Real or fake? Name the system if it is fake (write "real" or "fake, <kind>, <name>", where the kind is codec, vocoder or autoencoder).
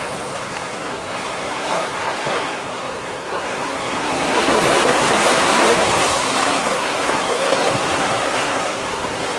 fake, codec, SNAC